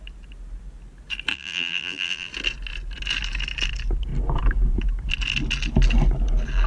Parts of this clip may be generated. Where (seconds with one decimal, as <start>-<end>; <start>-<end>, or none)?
1.3-2.3